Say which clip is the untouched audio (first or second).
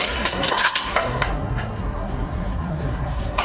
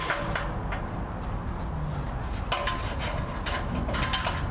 second